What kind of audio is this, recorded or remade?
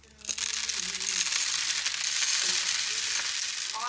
recorded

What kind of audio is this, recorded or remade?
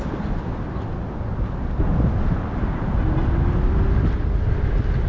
recorded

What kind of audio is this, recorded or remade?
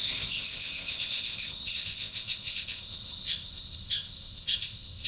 remade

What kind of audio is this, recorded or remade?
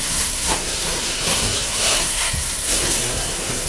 remade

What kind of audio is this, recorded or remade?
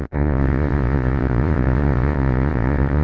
remade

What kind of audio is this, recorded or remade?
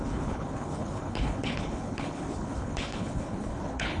remade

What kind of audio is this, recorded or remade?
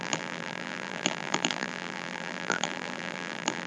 remade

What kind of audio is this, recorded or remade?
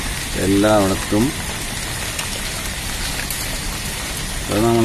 recorded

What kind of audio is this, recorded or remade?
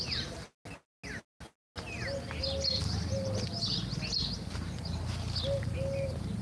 recorded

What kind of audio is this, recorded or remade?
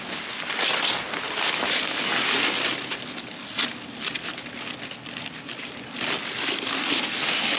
recorded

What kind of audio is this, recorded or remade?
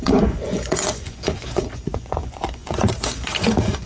remade